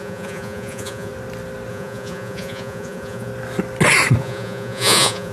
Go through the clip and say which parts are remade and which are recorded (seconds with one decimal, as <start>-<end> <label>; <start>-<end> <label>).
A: 0.0-1.1 remade; 1.1-1.7 recorded; 1.7-3.3 remade; 3.3-4.2 recorded; 4.2-5.3 remade